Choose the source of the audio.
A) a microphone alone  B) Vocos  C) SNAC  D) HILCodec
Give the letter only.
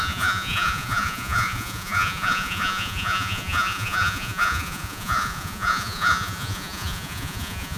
B